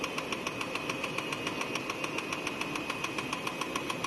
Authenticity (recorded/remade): recorded